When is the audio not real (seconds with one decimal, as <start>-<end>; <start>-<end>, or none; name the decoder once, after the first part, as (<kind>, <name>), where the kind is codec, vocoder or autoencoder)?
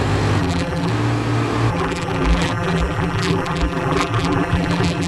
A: 0.4-0.9 (vocoder, BigVGAN v2); 1.7-5.1